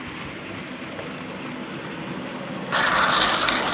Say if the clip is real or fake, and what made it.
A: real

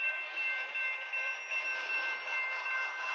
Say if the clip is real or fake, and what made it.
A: real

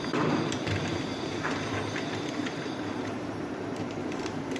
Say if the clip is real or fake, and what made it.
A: fake, vocoder, BigVGAN v2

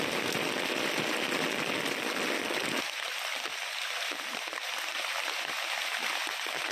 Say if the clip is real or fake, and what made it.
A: real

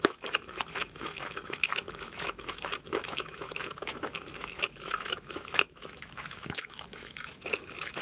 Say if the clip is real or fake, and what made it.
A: fake, autoencoder, DAC-VAE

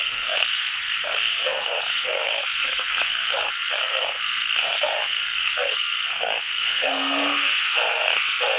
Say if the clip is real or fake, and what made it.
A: fake, codec, SNAC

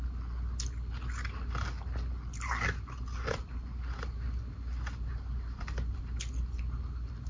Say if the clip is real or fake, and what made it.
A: real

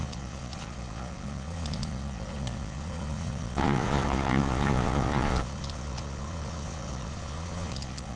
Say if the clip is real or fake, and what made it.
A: fake, vocoder, Vocos